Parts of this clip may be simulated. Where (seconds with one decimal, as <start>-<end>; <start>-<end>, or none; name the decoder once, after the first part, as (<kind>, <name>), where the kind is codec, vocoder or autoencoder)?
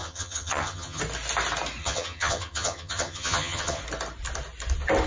0.0-1.0 (vocoder, HiFi-GAN); 1.8-3.8